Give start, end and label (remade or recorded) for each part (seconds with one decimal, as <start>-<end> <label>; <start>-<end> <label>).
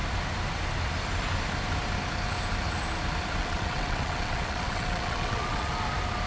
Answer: 0.0-3.4 recorded; 3.4-5.7 remade; 5.7-6.3 recorded